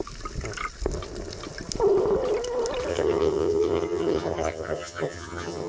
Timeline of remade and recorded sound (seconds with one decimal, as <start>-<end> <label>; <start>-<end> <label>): 0.0-2.9 recorded; 2.9-5.7 remade